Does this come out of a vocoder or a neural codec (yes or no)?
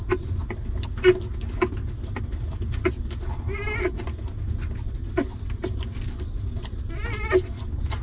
no